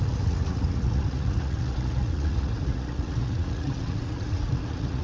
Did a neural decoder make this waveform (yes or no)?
yes